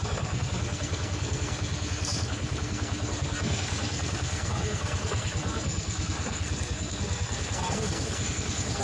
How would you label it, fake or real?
fake